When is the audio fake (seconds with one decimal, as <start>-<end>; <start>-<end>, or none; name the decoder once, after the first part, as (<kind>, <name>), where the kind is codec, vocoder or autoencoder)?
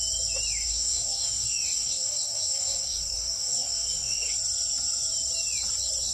0.6-4.3 (codec, DAC)